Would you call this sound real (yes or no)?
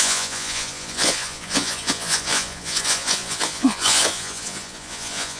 no